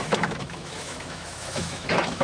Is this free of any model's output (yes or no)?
no